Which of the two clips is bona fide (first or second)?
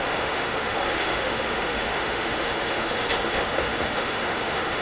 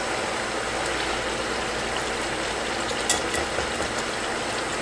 second